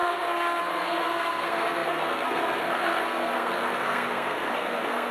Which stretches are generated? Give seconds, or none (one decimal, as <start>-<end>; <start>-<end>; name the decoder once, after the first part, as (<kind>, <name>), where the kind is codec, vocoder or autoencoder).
0.0-5.1 (codec, SNAC)